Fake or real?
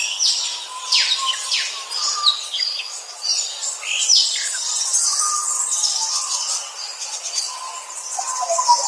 real